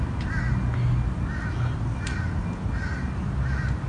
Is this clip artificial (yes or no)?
no